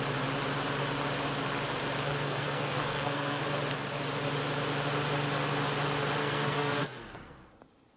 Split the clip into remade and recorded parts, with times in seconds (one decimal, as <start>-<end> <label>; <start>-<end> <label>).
0.0-2.1 recorded; 2.1-3.4 remade; 3.4-6.2 recorded; 6.2-7.5 remade; 7.5-8.0 recorded